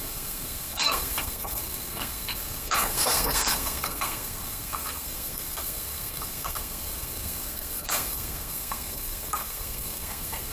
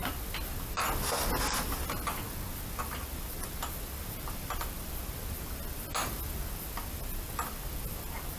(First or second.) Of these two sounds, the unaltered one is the second